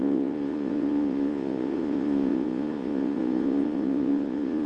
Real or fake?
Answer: fake